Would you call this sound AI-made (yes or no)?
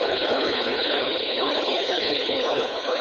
yes